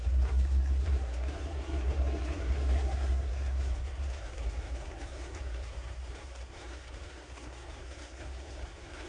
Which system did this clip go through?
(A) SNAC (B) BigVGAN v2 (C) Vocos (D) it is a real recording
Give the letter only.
A